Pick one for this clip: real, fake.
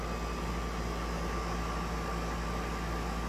real